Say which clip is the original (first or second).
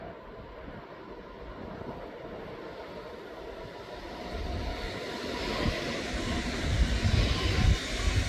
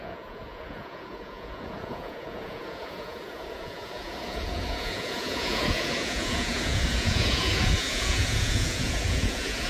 first